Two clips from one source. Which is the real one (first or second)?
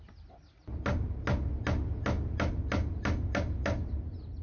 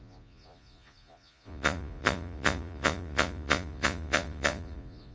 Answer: first